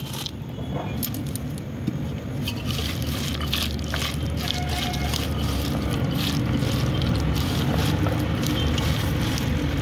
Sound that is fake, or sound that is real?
real